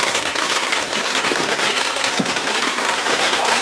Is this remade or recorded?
remade